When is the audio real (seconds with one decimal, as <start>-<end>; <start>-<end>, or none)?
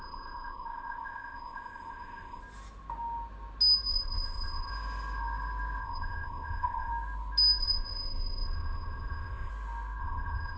2.4-3.9; 4.7-5.8; 6.9-7.6; 9.5-10.0